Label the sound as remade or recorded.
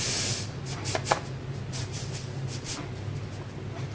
recorded